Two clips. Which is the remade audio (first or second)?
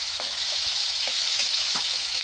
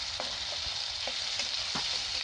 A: first